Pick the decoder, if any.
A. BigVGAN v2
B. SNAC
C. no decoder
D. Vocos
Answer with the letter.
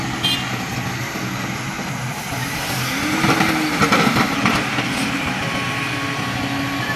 C